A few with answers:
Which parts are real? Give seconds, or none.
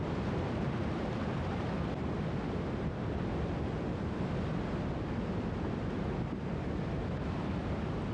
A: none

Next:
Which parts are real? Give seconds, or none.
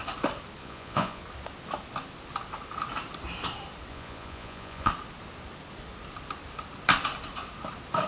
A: 0.0-0.6; 1.2-3.9; 4.9-8.1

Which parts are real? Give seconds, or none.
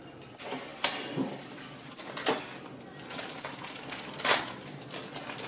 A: 0.0-0.7; 2.4-2.9; 5.1-5.5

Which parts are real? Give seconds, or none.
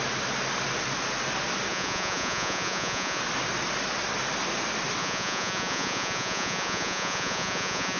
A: 0.0-1.7; 3.2-5.0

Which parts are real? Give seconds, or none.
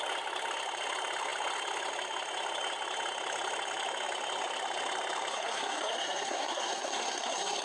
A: 0.0-5.3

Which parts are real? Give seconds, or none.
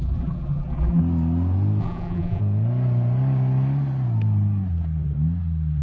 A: 1.0-1.8; 2.4-5.8